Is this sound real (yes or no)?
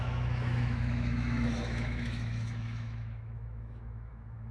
no